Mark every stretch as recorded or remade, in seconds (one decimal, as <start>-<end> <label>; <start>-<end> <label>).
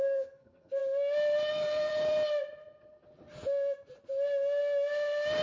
0.0-0.8 remade; 0.8-1.5 recorded; 1.5-1.9 remade; 1.9-5.4 recorded